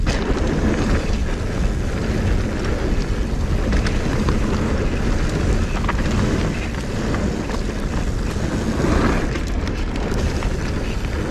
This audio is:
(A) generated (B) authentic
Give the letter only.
B